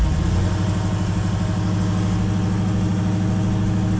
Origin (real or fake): real